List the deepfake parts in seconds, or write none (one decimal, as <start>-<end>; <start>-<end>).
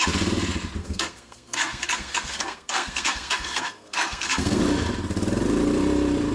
0.8-4.6